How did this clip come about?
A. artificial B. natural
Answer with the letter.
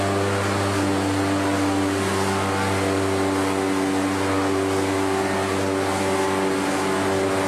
B